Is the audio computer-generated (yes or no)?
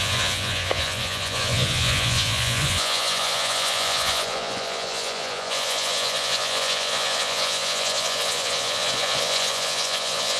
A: yes